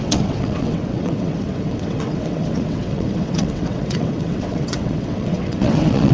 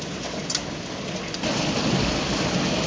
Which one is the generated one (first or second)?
first